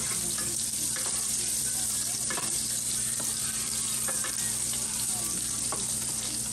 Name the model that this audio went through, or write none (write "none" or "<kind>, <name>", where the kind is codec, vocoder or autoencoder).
vocoder, BigVGAN v2